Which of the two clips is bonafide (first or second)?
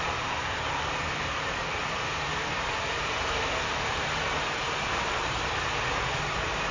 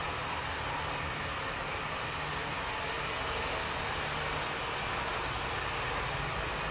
second